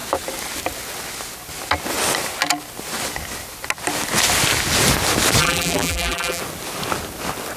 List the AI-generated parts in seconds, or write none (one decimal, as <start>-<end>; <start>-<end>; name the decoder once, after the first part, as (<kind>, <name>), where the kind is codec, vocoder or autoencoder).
5.4-6.4 (vocoder, BigVGAN v2)

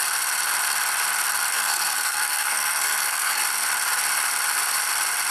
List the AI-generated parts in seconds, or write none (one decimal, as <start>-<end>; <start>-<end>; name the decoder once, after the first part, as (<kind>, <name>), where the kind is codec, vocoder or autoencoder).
1.5-3.4 (codec, SNAC)

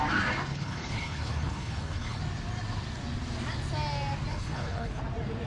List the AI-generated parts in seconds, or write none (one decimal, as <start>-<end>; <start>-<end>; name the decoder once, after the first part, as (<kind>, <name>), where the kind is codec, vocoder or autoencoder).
0.5-2.2 (codec, HILCodec); 4.3-5.0